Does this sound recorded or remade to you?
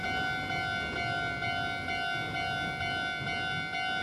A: recorded